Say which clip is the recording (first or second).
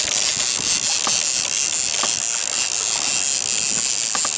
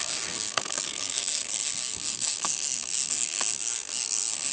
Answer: first